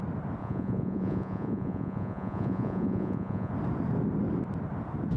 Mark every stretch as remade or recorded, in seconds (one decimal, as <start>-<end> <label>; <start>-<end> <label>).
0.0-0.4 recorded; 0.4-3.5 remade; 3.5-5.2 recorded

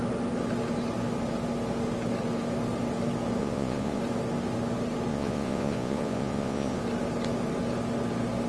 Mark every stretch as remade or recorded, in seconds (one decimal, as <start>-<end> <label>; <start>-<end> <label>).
0.0-3.4 recorded; 3.4-4.0 remade; 4.0-5.1 recorded; 5.1-6.8 remade; 6.8-8.5 recorded

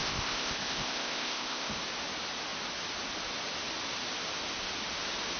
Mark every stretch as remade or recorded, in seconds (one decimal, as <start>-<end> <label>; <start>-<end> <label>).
0.0-1.8 remade; 1.8-5.4 recorded

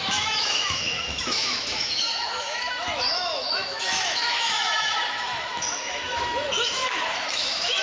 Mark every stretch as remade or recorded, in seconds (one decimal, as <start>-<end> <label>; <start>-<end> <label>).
0.0-7.8 remade

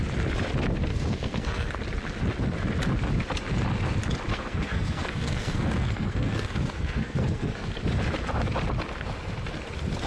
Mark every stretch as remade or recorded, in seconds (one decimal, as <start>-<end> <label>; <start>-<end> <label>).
0.0-0.9 recorded; 0.9-1.7 remade; 1.7-4.3 recorded; 4.3-7.7 remade; 7.7-10.1 recorded

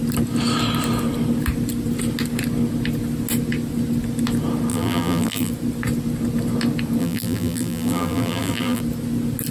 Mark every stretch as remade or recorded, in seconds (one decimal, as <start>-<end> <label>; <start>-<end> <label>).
0.0-4.7 recorded; 4.7-5.5 remade; 5.5-7.0 recorded; 7.0-8.8 remade; 8.8-9.5 recorded

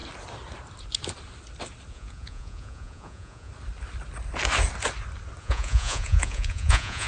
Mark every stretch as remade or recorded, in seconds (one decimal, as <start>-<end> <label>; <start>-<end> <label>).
0.0-1.9 recorded; 1.9-3.5 remade; 3.5-5.4 recorded; 5.4-7.1 remade